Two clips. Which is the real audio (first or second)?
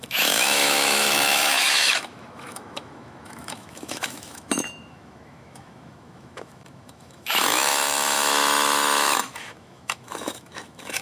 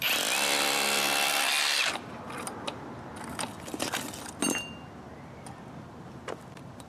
second